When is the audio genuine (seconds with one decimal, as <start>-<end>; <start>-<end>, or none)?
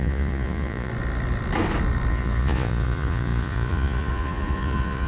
0.9-2.1